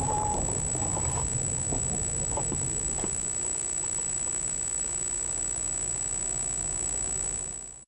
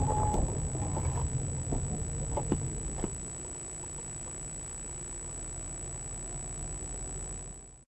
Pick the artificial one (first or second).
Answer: first